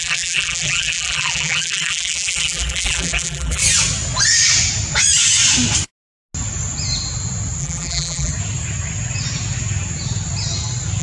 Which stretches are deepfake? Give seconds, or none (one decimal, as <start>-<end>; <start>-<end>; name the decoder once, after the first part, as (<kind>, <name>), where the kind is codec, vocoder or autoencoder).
0.0-3.6 (vocoder, BigVGAN v2); 7.6-8.3